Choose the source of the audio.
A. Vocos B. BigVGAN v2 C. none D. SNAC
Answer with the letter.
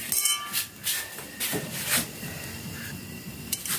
C